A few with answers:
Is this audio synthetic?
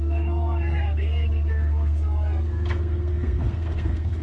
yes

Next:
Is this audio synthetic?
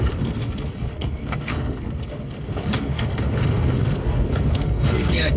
yes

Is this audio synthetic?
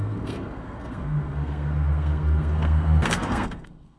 yes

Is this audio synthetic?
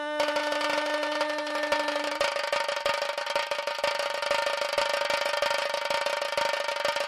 no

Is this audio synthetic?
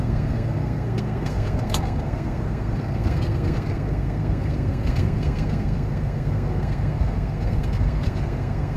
yes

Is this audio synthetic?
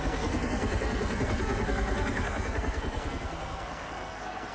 yes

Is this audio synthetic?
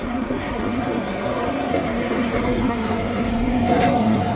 yes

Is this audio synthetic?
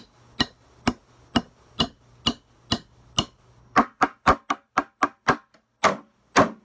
no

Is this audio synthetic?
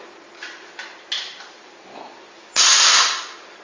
no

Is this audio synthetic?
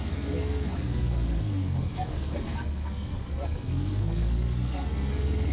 yes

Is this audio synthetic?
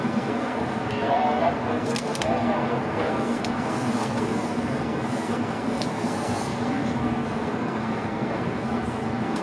yes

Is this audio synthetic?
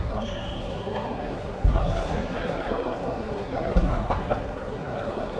yes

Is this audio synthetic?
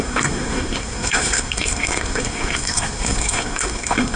yes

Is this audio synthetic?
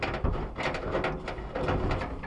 no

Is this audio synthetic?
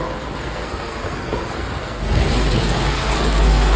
yes